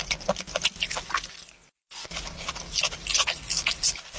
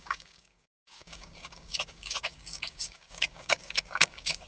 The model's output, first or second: second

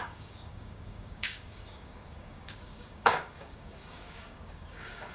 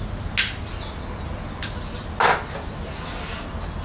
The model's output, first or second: first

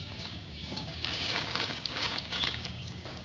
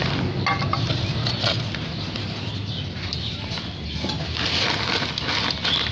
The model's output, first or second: first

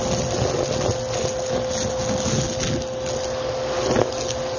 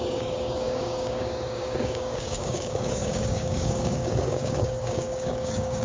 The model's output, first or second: second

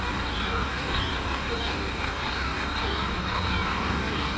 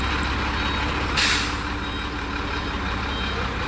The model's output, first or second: first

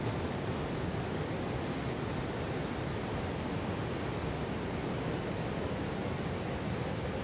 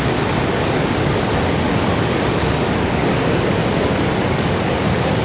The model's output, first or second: second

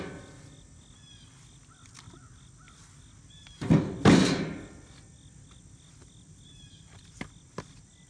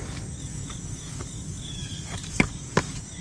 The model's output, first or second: second